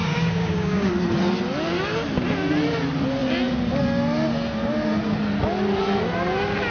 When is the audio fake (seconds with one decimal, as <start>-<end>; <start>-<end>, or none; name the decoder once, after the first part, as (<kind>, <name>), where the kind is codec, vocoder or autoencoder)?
0.0-0.9 (codec, DAC)